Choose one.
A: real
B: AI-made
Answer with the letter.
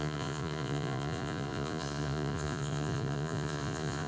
B